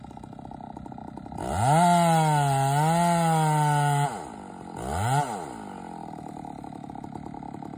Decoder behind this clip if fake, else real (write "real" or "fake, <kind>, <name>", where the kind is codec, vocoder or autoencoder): real